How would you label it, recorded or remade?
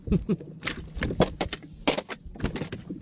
recorded